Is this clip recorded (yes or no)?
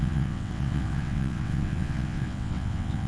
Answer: no